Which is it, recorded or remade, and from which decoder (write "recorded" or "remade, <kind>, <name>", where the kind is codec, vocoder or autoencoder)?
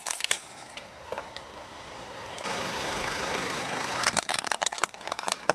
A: remade, codec, SNAC